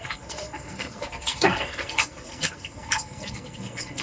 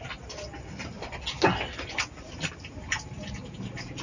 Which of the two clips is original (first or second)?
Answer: second